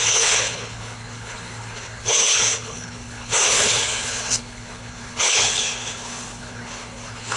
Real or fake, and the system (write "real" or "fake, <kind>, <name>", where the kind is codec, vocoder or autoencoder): fake, codec, HILCodec